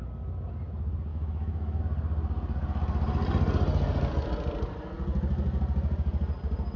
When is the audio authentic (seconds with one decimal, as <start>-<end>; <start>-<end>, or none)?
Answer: 0.0-1.1; 1.8-6.8